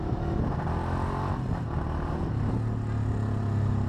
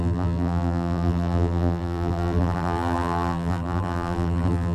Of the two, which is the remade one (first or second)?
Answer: second